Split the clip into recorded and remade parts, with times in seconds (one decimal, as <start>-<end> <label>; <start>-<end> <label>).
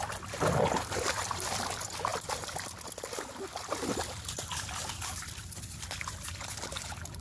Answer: 0.0-5.4 recorded; 5.4-6.6 remade; 6.6-7.2 recorded